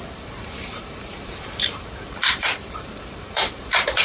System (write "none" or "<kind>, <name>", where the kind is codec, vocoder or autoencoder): vocoder, BigVGAN v2